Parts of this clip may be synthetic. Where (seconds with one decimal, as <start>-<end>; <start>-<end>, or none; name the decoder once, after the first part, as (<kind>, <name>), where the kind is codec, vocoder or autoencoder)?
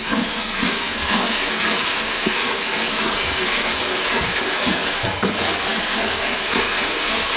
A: 0.0-7.4 (codec, SNAC)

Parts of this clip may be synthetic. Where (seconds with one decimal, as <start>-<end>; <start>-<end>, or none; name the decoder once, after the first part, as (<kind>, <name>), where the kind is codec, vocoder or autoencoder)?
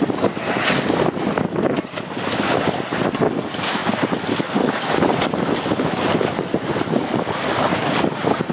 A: none